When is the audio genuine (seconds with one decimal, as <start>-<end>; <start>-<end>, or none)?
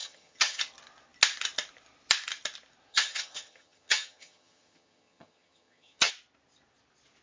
0.6-2.9; 6.1-7.2